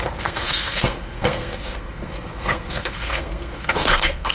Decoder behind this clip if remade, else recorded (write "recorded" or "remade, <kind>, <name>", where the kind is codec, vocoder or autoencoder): remade, codec, SNAC